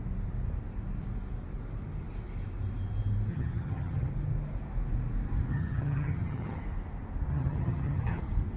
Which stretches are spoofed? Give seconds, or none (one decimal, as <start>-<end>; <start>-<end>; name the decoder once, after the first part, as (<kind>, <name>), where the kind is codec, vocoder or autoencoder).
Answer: 3.3-4.1 (vocoder, HiFi-GAN); 5.5-6.6; 7.3-8.2